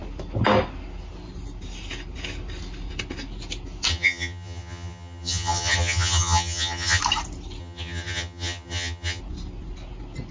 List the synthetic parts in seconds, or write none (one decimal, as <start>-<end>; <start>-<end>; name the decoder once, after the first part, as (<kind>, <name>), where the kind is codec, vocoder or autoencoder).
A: 3.9-7.0 (vocoder, HiFi-GAN); 7.6-9.2